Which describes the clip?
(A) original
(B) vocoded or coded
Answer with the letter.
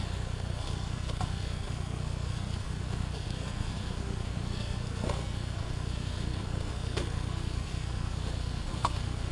B